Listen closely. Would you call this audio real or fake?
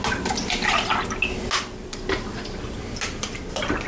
real